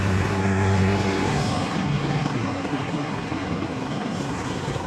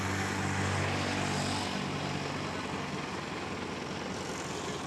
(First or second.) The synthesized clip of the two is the first